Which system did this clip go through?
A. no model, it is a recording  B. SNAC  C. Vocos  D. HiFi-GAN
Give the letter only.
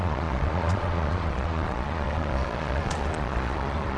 C